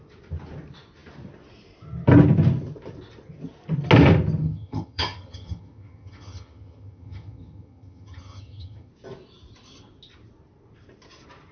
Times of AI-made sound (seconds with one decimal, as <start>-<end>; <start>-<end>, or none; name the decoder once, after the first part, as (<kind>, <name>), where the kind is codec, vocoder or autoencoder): 4.4-8.9 (vocoder, HiFi-GAN)